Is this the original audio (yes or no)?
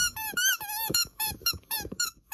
no